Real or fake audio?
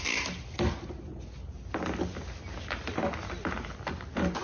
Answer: real